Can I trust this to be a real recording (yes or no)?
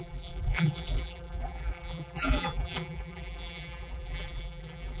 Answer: no